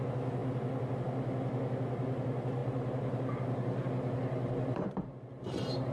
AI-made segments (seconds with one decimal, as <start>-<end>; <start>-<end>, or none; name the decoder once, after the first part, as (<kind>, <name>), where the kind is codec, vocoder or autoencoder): 2.6-5.9 (vocoder, BigVGAN v2)